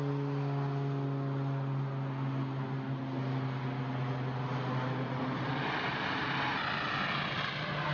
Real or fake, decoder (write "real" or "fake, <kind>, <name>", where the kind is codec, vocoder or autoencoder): real